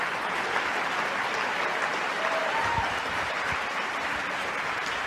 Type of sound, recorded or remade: recorded